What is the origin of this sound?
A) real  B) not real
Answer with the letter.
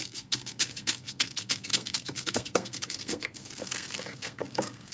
B